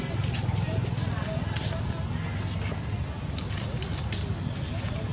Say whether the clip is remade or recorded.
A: recorded